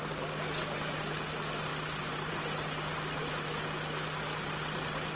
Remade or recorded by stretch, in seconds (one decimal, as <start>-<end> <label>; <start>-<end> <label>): 0.0-5.2 recorded